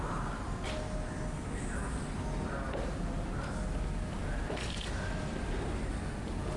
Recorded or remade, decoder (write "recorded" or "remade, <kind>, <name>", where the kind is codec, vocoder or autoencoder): recorded